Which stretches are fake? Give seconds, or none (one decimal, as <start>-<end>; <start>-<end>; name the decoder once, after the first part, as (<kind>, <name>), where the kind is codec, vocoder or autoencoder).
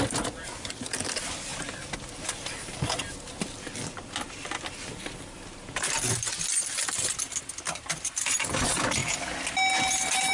0.0-9.0 (vocoder, BigVGAN v2); 9.8-10.3